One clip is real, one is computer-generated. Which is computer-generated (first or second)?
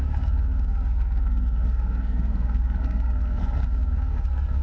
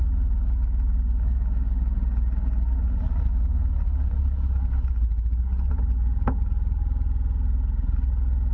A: first